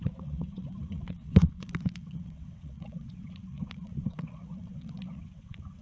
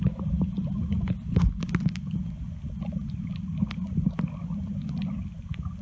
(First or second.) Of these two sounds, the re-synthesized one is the first